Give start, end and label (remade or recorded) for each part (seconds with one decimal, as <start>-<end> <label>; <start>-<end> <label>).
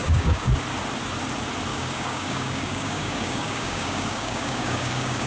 0.0-0.5 remade; 0.5-1.7 recorded; 1.7-5.3 remade